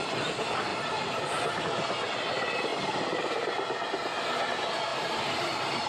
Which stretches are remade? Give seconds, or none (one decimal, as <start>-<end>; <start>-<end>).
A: 4.9-5.9